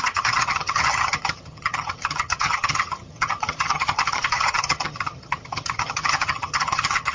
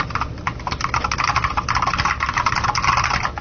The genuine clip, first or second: second